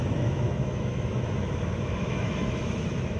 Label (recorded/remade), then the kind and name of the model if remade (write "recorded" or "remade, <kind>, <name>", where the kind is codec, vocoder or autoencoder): remade, autoencoder, DAC-VAE